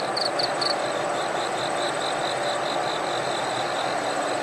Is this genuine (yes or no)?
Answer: yes